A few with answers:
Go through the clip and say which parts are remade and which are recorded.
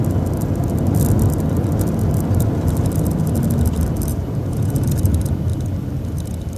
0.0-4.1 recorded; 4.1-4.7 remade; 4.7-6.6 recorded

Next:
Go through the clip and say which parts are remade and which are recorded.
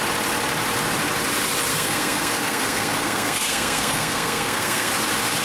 0.0-1.7 recorded; 1.7-4.9 remade; 4.9-5.4 recorded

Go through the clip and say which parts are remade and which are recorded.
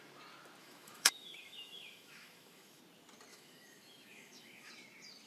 0.0-0.6 recorded; 0.6-2.8 remade; 2.8-3.3 recorded; 3.3-4.7 remade; 4.7-5.3 recorded